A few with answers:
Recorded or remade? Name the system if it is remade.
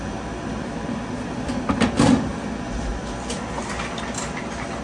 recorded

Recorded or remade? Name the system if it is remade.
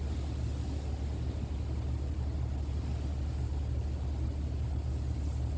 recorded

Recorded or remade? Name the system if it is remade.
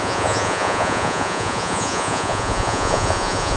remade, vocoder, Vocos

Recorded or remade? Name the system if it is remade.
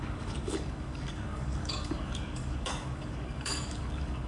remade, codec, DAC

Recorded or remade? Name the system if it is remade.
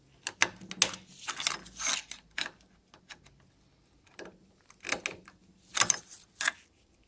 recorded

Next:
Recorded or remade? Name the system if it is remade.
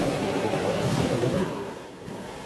remade, codec, SNAC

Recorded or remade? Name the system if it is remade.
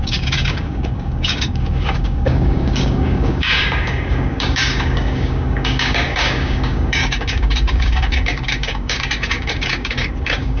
remade, codec, DAC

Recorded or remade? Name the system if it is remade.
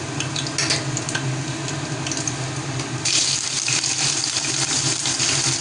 recorded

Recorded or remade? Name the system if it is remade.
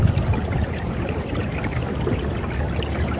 recorded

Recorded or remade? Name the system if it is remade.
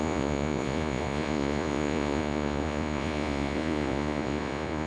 remade, vocoder, Vocos